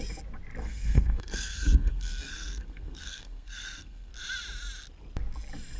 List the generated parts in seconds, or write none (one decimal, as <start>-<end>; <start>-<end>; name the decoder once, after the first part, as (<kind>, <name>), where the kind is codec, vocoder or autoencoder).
0.6-4.1 (codec, SNAC)

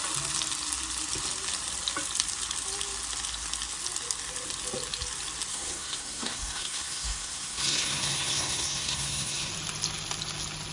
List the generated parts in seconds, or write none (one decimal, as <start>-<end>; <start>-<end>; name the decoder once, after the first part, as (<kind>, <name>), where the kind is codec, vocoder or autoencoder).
5.5-9.5 (codec, SNAC)

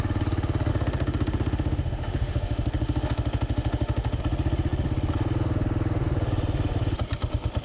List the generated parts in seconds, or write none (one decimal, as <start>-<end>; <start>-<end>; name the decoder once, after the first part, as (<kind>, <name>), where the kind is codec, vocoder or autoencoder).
0.7-4.2 (autoencoder, DAC-VAE)

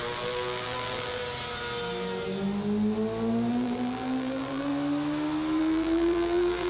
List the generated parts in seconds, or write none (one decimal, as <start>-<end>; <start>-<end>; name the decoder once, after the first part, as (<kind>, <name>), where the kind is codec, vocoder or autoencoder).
0.0-1.2 (vocoder, BigVGAN v2); 3.5-4.7; 5.6-6.7

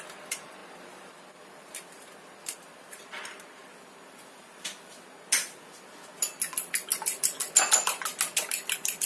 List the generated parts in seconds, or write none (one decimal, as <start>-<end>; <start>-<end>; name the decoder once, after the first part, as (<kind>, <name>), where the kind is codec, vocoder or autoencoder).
0.0-3.6 (vocoder, BigVGAN v2); 8.5-9.1